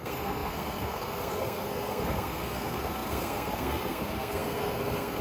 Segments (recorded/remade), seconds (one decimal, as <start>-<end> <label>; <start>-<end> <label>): 0.0-5.2 remade